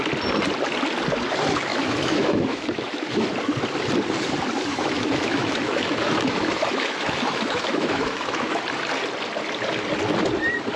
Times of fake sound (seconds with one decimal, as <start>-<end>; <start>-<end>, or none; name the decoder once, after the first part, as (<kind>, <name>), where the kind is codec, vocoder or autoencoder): 1.7-3.2 (autoencoder, DAC-VAE); 4.7-8.6